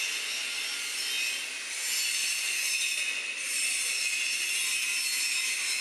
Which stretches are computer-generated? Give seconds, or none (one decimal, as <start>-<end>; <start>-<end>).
2.2-4.5